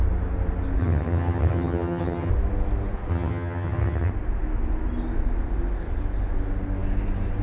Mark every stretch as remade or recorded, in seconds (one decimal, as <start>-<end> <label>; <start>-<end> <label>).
0.0-0.8 recorded; 0.8-2.3 remade; 2.3-3.1 recorded; 3.1-4.1 remade; 4.1-7.4 recorded